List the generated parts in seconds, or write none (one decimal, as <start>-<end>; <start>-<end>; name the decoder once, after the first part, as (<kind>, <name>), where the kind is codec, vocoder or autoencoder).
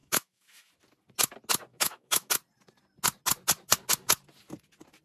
0.0-0.7 (autoencoder, DAC-VAE); 1.7-2.3